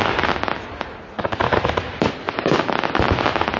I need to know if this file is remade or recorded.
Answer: recorded